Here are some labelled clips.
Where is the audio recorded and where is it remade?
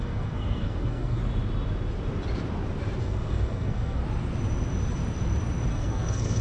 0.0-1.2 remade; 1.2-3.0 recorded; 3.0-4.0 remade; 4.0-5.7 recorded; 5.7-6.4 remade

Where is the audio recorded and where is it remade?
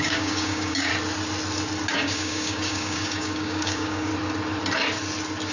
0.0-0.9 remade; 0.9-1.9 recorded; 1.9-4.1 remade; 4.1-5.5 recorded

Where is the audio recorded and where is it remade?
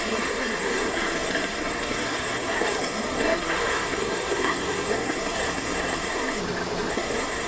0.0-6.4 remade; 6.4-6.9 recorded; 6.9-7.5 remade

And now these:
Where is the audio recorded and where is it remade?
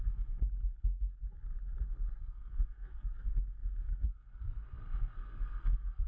0.0-1.2 remade; 1.2-2.2 recorded; 2.2-6.1 remade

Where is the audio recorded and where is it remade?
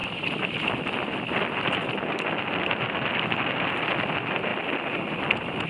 0.0-5.7 recorded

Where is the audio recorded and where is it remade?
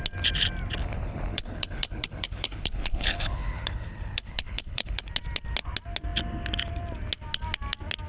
0.0-0.8 recorded; 0.8-5.1 remade; 5.1-8.1 recorded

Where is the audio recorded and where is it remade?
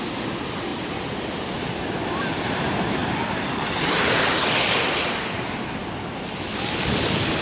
0.0-7.4 recorded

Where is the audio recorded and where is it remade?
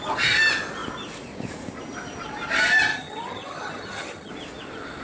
0.0-2.9 recorded; 2.9-4.3 remade; 4.3-5.0 recorded